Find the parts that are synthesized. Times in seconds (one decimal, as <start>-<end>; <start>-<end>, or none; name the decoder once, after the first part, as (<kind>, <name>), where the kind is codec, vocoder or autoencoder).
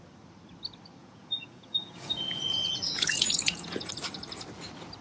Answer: 1.0-3.9 (vocoder, Vocos)